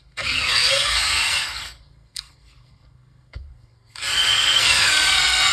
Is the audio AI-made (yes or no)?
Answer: yes